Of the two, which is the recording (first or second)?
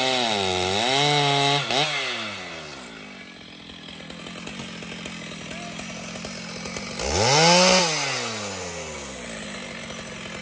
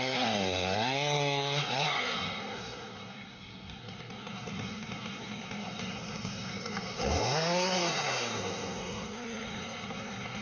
first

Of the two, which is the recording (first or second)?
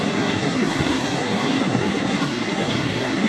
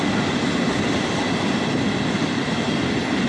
second